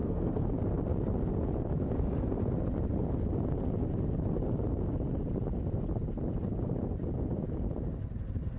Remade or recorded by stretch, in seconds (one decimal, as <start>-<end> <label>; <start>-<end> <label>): 0.0-0.5 remade; 0.5-8.6 recorded